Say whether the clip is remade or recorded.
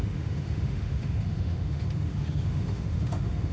remade